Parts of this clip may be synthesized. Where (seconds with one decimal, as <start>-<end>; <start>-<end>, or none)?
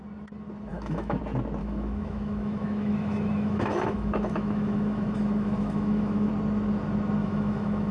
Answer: 0.7-1.2; 1.6-6.3; 7.2-7.9